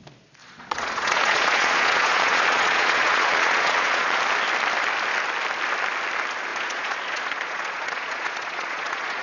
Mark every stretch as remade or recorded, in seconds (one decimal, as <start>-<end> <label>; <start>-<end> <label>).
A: 0.0-0.4 recorded; 0.4-4.2 remade; 4.2-6.5 recorded; 6.5-9.2 remade